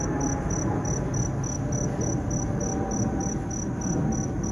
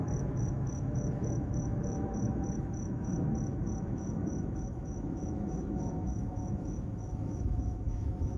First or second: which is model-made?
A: second